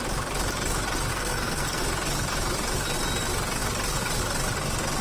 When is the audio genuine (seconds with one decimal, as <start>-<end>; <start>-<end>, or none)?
0.0-1.1; 1.8-5.0